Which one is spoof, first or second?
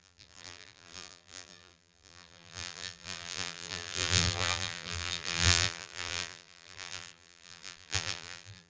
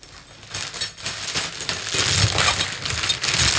first